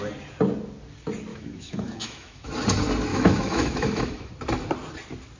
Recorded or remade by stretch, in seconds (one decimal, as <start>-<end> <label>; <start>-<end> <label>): 0.0-1.3 recorded; 1.3-2.5 remade; 2.5-3.1 recorded; 3.1-4.3 remade; 4.3-5.4 recorded